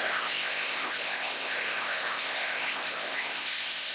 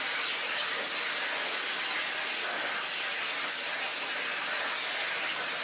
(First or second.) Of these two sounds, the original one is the second